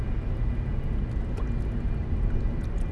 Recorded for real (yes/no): yes